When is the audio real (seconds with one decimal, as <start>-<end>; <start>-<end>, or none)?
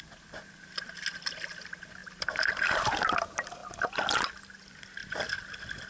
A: 0.0-5.9